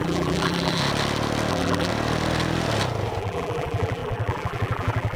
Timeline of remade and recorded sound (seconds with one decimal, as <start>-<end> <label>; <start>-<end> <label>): 0.0-0.8 remade; 0.8-1.5 recorded; 1.5-1.9 remade; 1.9-3.2 recorded; 3.2-5.2 remade